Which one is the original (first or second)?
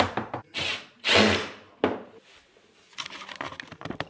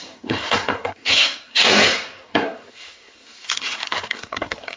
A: first